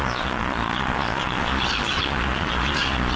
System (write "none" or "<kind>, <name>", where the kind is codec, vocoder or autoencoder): vocoder, Vocos